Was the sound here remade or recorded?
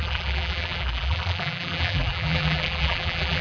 remade